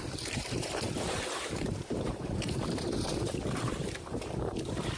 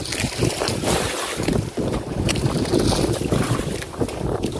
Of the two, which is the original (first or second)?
second